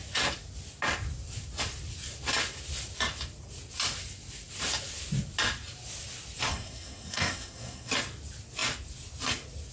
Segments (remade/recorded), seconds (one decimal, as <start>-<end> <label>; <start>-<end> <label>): 0.0-6.5 recorded; 6.5-7.9 remade; 7.9-9.7 recorded